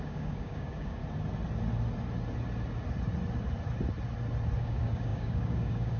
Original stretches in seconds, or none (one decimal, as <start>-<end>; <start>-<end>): 1.0-4.6